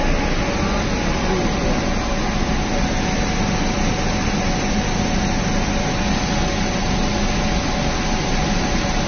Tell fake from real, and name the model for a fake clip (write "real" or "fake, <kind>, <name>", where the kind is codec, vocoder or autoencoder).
real